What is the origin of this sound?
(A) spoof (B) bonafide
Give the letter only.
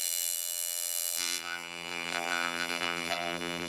A